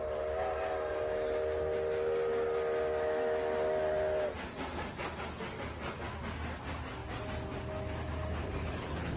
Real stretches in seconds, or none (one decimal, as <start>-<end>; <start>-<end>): 0.0-8.4